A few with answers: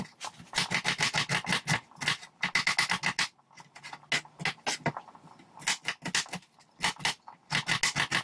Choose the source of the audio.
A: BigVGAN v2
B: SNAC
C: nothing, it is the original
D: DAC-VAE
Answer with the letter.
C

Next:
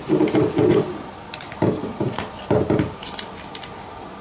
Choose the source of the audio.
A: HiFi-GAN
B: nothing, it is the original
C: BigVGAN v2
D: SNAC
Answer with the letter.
B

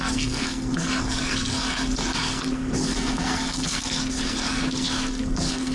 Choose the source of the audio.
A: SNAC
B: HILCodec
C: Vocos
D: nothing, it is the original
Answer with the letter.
A